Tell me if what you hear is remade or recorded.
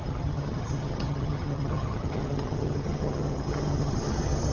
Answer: remade